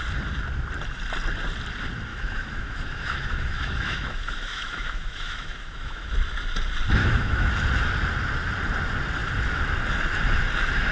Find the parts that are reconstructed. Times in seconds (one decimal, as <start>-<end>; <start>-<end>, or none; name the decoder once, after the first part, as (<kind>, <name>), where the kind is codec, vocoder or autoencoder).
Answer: 2.1-6.1 (autoencoder, DAC-VAE); 7.0-7.5